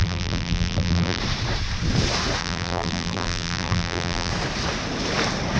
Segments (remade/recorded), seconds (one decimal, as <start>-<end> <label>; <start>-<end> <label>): 0.0-1.2 remade; 1.2-2.4 recorded; 2.4-4.3 remade; 4.3-5.6 recorded